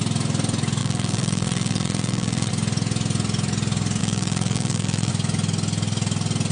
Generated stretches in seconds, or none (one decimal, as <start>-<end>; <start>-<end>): 0.8-2.5; 4.0-5.1